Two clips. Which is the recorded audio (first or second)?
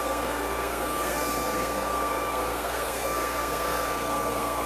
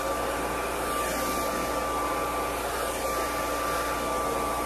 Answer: second